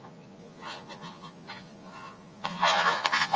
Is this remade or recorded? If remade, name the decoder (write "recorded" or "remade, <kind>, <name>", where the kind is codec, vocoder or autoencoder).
remade, vocoder, Vocos